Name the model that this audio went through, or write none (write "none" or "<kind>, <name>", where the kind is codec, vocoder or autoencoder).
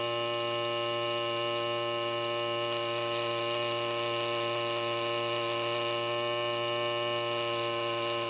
none